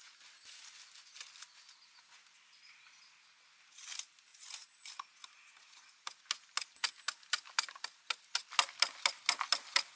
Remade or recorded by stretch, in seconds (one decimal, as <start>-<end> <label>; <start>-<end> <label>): 0.0-4.3 recorded; 4.3-4.9 remade; 4.9-10.0 recorded